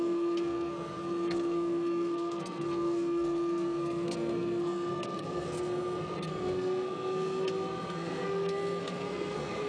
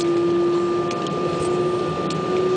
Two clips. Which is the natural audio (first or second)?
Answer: second